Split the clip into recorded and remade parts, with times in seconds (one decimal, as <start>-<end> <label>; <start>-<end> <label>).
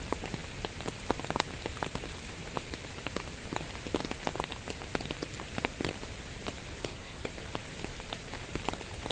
0.0-6.8 recorded; 6.8-7.3 remade; 7.3-9.1 recorded